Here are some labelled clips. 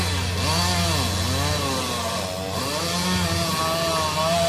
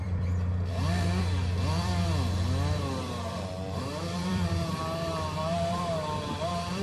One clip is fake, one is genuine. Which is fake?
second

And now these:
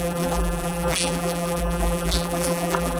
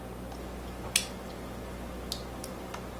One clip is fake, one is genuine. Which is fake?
first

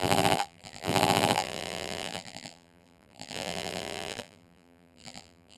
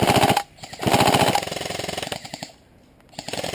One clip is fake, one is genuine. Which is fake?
first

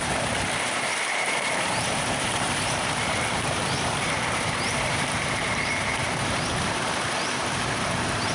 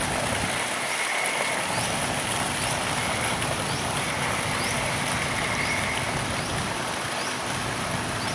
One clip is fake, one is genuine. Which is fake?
first